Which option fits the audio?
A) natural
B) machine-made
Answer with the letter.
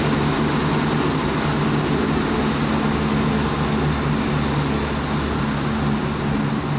A